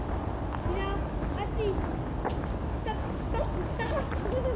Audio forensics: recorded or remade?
recorded